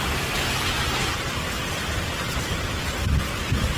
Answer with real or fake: real